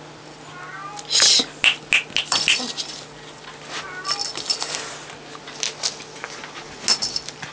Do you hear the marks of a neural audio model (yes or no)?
no